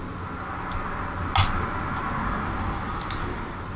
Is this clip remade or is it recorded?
recorded